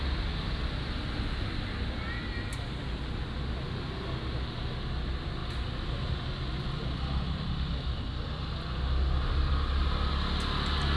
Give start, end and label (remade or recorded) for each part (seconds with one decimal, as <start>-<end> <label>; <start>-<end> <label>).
0.0-11.0 recorded